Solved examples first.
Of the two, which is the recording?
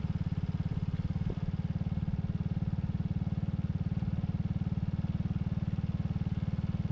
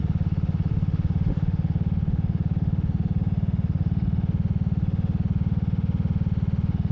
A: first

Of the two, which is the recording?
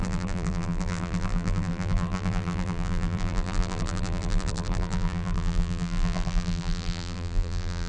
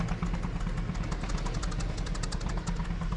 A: second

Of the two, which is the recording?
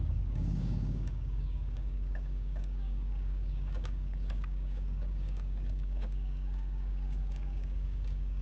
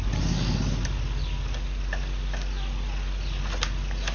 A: second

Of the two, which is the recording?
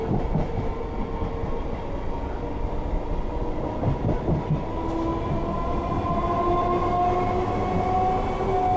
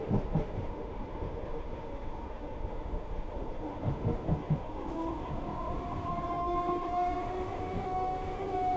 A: first